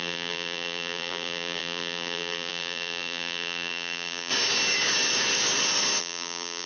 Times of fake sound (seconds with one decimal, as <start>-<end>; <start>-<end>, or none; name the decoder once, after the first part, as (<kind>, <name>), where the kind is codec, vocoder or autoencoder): 0.0-4.3 (vocoder, BigVGAN v2); 6.0-6.7

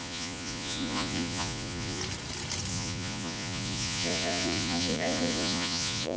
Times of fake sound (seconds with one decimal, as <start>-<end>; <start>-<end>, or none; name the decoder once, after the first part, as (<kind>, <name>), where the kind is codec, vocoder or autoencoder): 0.0-2.0 (vocoder, Vocos); 2.7-6.2

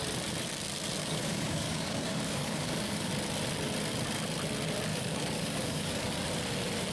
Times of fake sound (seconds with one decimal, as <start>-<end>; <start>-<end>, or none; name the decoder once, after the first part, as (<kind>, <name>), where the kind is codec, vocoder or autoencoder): 1.0-3.1 (codec, DAC); 4.9-6.1

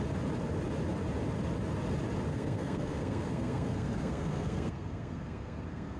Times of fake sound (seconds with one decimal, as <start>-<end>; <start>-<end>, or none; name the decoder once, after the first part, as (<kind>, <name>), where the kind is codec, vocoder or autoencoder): 2.3-6.0 (codec, SNAC)